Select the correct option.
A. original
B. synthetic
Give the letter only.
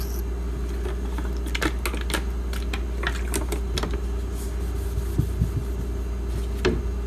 A